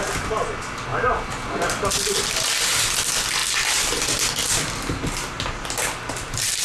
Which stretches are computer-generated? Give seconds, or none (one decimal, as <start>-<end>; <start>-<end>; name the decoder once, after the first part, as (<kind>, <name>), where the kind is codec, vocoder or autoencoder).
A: none